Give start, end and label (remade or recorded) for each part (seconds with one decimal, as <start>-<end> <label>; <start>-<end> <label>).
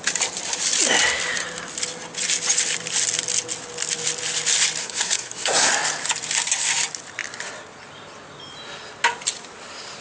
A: 0.0-4.8 recorded; 4.8-5.7 remade; 5.7-10.0 recorded